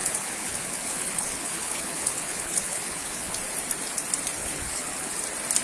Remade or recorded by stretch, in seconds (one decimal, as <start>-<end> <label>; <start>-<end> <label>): 0.0-3.4 remade; 3.4-4.4 recorded; 4.4-5.1 remade; 5.1-5.6 recorded